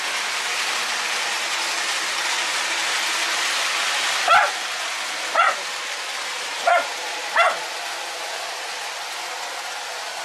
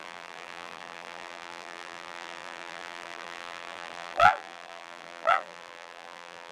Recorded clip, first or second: first